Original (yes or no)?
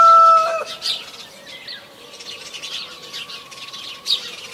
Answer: yes